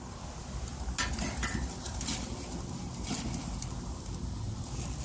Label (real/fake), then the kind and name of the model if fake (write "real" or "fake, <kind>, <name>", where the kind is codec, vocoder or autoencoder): real